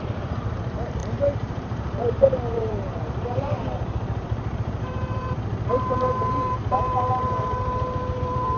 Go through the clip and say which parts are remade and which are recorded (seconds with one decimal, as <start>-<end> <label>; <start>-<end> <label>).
0.0-3.6 remade; 3.6-4.5 recorded; 4.5-8.6 remade